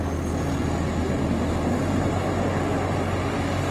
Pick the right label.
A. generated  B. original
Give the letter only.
B